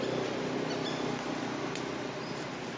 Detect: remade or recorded recorded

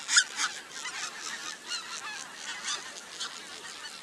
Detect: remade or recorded recorded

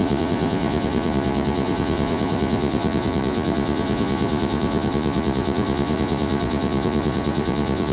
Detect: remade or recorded remade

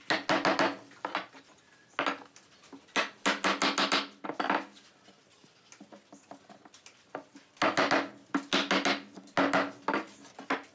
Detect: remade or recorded recorded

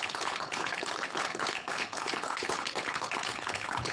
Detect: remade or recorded remade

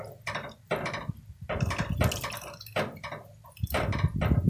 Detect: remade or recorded recorded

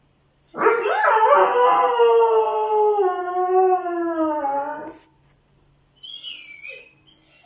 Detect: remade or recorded recorded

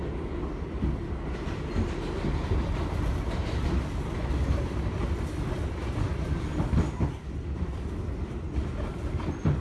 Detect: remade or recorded recorded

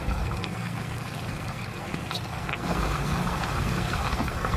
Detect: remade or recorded remade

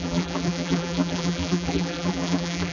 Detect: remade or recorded remade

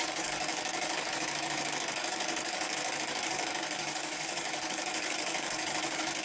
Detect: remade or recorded remade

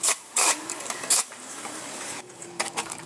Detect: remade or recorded remade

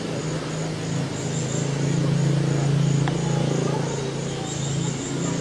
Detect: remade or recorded recorded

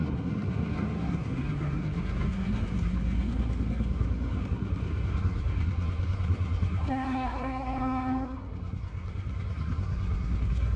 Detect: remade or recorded remade